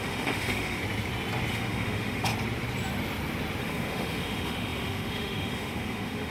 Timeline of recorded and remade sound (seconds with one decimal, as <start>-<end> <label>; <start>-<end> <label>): 0.0-0.8 remade; 0.8-1.5 recorded; 1.5-2.3 remade; 2.3-3.6 recorded; 3.6-6.3 remade